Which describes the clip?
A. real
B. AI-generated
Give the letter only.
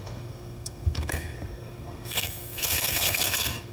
B